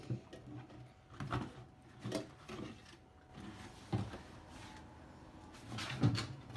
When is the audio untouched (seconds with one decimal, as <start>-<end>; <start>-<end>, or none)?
0.0-6.6